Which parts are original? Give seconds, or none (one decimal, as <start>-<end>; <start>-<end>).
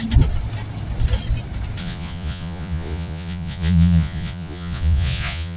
0.0-1.8